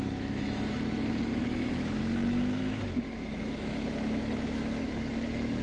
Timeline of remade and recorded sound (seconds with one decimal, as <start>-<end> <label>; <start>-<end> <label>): 0.0-5.6 remade